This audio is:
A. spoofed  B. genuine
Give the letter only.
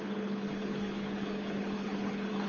A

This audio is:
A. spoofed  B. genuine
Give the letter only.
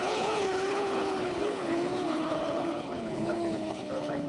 A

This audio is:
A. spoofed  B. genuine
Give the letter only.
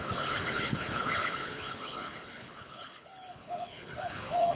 A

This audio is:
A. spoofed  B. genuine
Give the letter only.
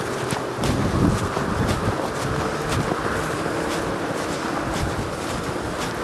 B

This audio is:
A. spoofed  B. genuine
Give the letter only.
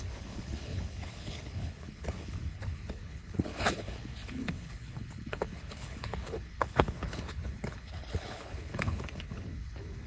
A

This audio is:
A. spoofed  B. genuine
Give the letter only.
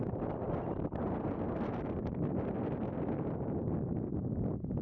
B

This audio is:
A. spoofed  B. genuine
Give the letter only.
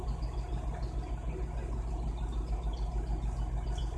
B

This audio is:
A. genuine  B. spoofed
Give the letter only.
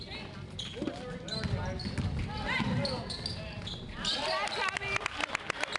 A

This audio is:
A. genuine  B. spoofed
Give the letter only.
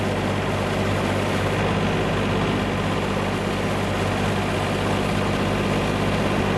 A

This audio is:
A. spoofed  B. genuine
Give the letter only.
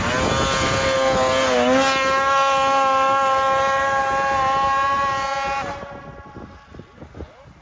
B